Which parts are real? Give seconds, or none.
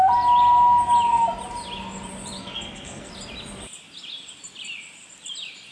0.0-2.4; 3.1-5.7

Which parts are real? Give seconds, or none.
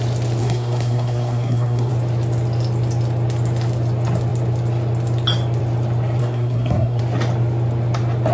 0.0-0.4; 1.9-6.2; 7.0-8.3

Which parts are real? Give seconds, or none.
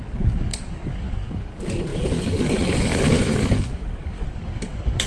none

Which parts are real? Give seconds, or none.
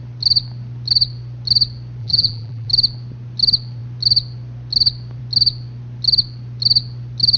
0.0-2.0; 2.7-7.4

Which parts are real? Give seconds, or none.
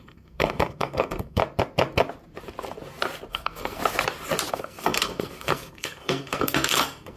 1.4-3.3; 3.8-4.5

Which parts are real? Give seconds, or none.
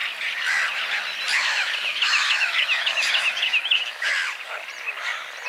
0.0-1.3; 4.1-5.5